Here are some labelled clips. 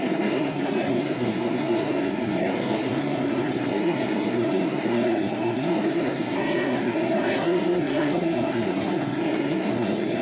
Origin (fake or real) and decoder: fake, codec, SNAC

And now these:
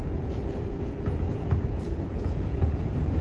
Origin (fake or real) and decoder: fake, vocoder, Vocos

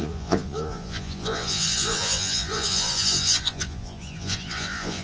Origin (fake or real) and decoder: fake, vocoder, Vocos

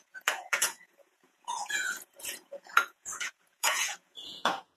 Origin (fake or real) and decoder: fake, vocoder, Vocos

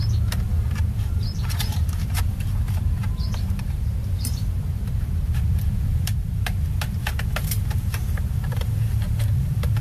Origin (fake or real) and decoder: fake, vocoder, BigVGAN v2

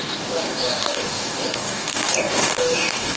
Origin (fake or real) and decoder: fake, codec, DAC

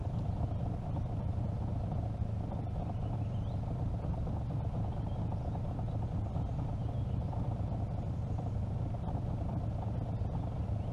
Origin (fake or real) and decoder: real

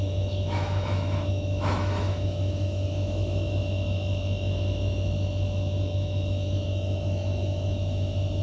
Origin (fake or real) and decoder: fake, autoencoder, DAC-VAE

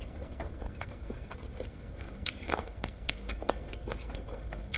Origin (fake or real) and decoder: fake, codec, SNAC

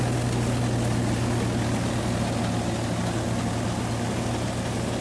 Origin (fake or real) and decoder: real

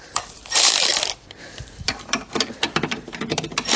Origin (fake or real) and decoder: fake, vocoder, BigVGAN v2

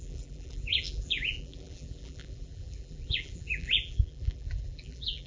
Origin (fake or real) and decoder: fake, vocoder, BigVGAN v2